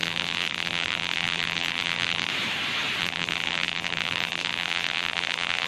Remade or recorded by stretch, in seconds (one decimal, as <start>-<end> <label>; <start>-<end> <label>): 0.0-2.3 remade; 2.3-3.0 recorded; 3.0-5.7 remade